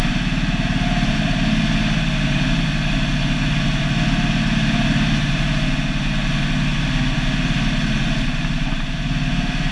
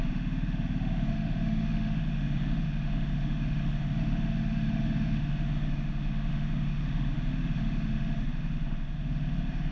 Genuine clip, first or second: first